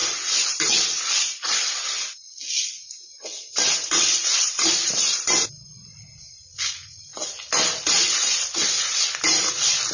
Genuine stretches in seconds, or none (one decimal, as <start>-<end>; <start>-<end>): 0.0-9.9

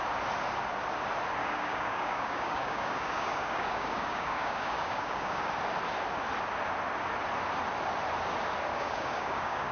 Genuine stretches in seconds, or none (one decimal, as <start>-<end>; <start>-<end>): 0.0-1.4; 5.5-8.7

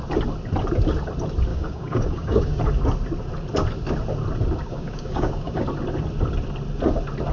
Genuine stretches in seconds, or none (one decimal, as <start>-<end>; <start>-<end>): 0.0-1.5; 2.6-4.7; 5.6-7.3

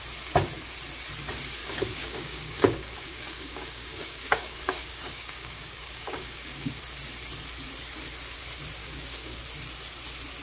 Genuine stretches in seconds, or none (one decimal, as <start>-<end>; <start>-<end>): 0.0-1.6; 6.8-8.8; 9.4-10.4

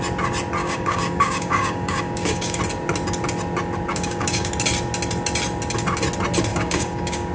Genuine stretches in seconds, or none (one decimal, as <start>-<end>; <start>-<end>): 0.0-0.6; 2.6-3.9; 4.5-6.5

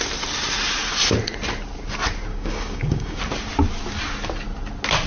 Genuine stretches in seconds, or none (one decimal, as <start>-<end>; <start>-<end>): 0.0-2.3; 3.2-5.1